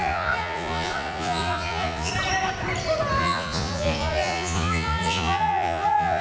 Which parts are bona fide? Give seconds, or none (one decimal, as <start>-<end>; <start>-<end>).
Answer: 2.1-3.2